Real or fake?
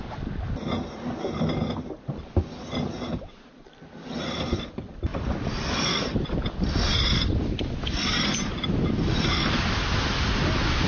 real